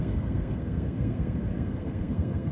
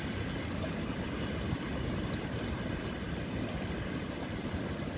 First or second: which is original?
second